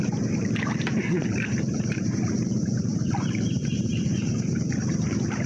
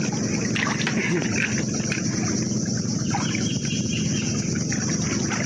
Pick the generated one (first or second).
first